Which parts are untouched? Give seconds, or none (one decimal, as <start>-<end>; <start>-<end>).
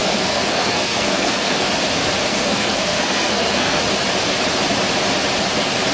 1.7-2.3; 3.8-5.9